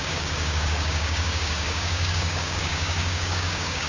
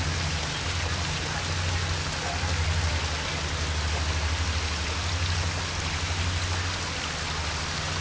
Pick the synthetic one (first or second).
first